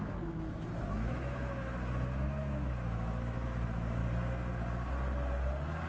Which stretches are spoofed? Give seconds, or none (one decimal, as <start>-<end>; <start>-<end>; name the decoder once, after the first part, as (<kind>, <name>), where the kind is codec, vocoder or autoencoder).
0.0-4.0 (autoencoder, DAC-VAE)